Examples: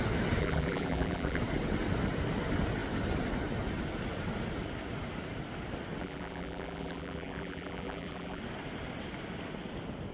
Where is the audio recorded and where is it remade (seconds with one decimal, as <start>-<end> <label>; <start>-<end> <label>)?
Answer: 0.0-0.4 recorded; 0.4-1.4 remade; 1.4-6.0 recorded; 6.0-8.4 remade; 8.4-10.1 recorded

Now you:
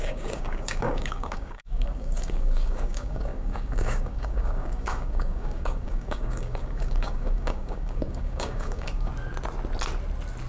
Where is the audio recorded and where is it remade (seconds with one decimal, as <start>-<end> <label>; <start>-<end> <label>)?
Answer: 0.0-9.1 remade; 9.1-10.5 recorded

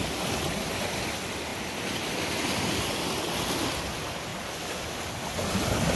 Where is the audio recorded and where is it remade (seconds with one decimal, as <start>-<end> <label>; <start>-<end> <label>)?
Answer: 0.0-6.0 recorded

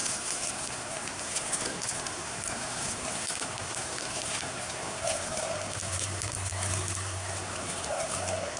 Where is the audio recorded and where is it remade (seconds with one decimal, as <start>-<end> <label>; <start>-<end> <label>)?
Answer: 0.0-8.6 remade

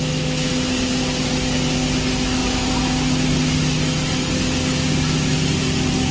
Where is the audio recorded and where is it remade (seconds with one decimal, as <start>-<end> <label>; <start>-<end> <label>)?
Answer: 0.0-0.5 remade; 0.5-6.1 recorded

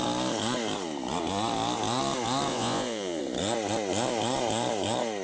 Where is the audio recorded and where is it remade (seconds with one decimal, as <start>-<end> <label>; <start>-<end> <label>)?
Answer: 0.0-2.5 recorded; 2.5-3.2 remade; 3.2-5.2 recorded

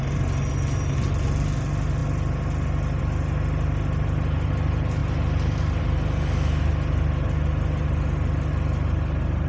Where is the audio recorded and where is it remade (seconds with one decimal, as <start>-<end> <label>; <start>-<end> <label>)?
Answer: 0.0-9.5 recorded

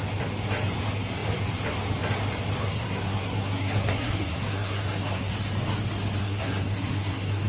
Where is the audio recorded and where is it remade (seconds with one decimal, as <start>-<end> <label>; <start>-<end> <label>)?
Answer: 0.0-2.6 recorded; 2.6-5.3 remade; 5.3-6.2 recorded; 6.2-7.5 remade